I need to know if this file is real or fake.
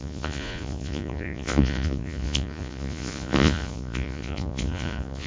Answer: fake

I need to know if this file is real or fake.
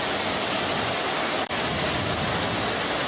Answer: real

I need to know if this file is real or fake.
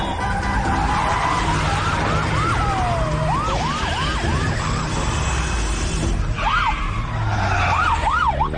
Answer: real